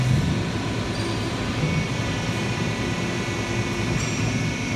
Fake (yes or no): no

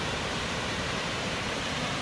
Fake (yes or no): yes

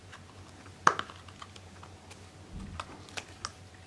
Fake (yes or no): no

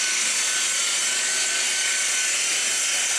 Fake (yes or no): no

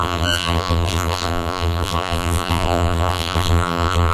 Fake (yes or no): yes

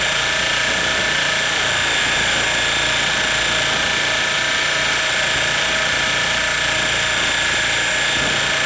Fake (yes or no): no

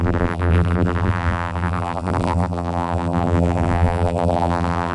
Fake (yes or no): yes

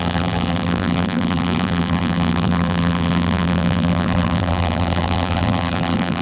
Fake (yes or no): yes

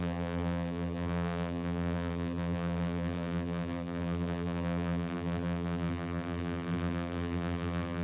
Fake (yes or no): yes